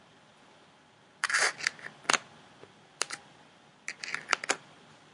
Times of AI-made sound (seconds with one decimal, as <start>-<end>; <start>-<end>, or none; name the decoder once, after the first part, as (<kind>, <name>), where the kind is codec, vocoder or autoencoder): none

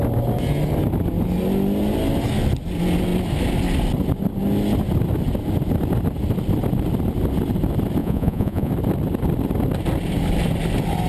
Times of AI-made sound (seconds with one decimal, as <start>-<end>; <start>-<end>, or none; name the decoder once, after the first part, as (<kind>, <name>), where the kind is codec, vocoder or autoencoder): 8.0-8.7 (vocoder, Vocos)

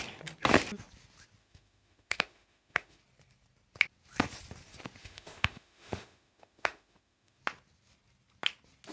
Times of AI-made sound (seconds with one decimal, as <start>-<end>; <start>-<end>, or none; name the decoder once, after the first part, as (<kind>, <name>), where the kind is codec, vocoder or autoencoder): 1.4-3.0 (autoencoder, DAC-VAE); 5.0-7.4

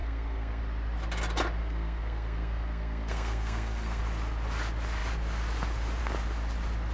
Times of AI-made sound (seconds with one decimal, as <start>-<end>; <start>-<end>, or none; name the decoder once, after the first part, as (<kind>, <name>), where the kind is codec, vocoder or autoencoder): 0.0-0.6 (codec, SNAC); 1.6-4.0